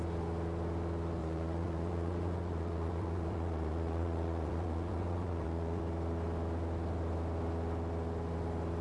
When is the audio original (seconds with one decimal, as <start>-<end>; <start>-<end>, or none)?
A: 0.0-1.2; 5.8-8.8